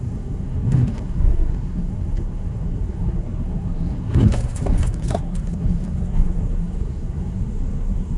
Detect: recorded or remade remade